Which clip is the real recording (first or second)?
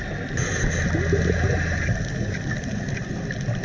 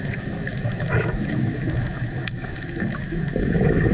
first